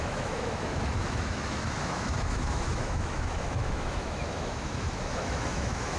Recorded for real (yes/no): no